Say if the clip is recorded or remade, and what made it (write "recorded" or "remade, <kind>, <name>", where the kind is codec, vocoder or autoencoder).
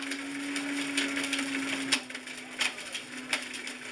recorded